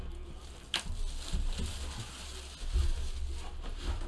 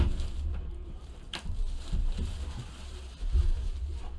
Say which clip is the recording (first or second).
first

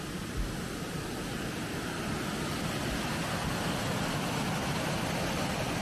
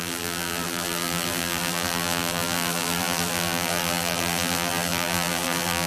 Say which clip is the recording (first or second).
first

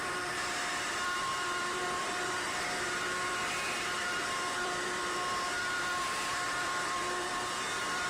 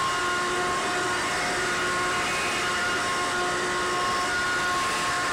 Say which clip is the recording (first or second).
second